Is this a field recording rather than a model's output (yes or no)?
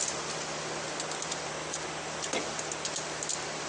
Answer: yes